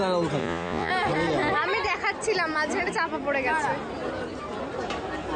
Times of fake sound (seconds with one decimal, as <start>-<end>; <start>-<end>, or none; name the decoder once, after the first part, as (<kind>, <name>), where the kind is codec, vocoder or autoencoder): 0.4-0.9 (vocoder, Vocos)